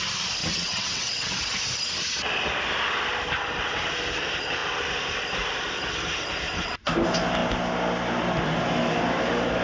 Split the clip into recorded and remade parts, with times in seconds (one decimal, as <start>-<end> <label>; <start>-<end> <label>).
0.0-0.4 recorded; 0.4-1.3 remade; 1.3-9.6 recorded